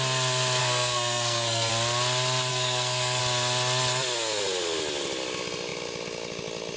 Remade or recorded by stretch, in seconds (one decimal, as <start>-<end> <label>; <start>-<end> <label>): 0.0-0.6 recorded; 0.6-1.7 remade; 1.7-2.5 recorded; 2.5-3.2 remade; 3.2-6.8 recorded